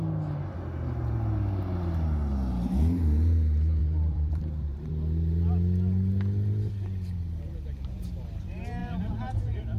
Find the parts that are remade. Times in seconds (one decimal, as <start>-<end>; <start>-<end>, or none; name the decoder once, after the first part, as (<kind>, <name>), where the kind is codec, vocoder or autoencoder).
3.8-4.9 (vocoder, BigVGAN v2); 8.8-9.8